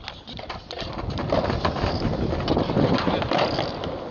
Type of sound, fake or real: real